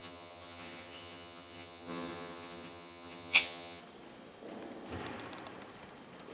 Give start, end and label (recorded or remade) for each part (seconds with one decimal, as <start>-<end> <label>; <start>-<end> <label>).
0.0-3.8 remade; 3.8-6.3 recorded